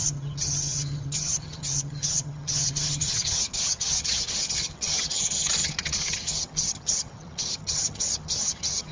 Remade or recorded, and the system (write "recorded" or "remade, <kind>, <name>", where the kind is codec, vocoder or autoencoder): remade, vocoder, HiFi-GAN